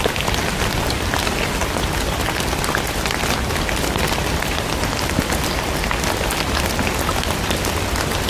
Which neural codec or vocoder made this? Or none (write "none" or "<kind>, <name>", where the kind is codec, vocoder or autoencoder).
none